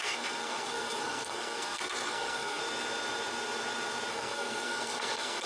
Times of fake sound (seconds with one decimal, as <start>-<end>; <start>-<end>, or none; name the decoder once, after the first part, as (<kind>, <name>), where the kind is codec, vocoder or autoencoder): 0.0-2.6 (codec, SNAC); 4.1-5.5